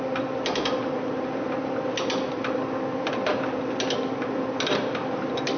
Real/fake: real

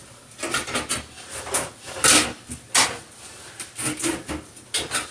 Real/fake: real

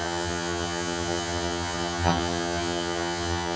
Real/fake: fake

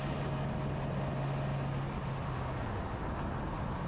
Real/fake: real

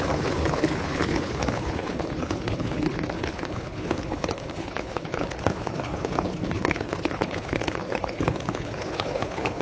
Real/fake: fake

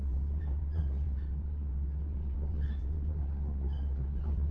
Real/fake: fake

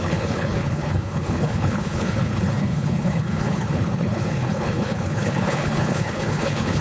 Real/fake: fake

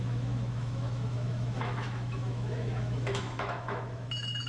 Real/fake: fake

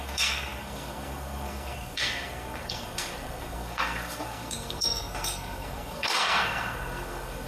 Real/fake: fake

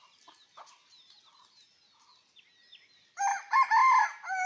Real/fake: real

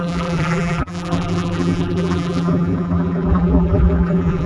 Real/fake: fake